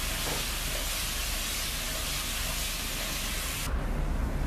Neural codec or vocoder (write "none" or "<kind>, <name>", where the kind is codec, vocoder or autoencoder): none